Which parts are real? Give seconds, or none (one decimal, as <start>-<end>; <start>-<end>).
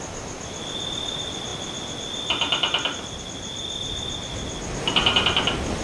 0.0-5.8